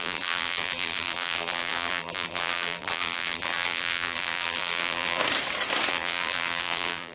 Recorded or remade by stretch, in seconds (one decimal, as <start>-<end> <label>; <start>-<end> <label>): 0.0-5.2 remade; 5.2-5.9 recorded; 5.9-7.1 remade